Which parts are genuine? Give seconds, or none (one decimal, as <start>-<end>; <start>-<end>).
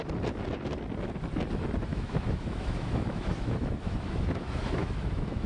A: 0.0-1.9